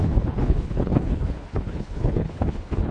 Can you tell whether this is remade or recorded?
remade